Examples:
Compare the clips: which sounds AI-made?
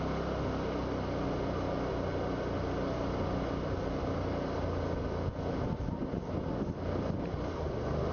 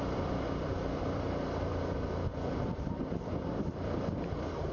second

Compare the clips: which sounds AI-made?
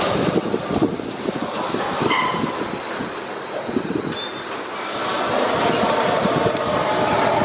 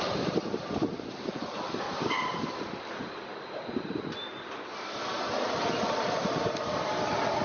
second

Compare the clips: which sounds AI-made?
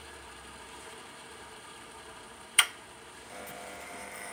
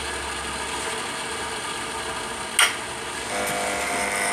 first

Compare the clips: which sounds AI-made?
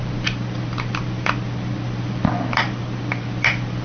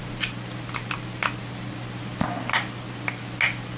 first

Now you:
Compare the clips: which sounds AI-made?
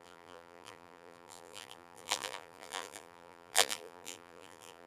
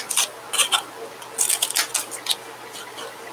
first